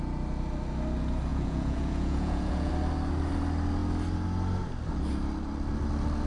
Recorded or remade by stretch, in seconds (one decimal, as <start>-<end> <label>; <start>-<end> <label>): 0.0-1.3 recorded; 1.3-2.7 remade; 2.7-6.3 recorded